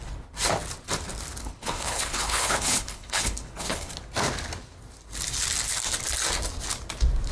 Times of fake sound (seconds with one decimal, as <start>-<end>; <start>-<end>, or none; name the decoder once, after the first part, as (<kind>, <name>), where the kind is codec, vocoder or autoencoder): 1.4-3.9 (codec, HILCodec)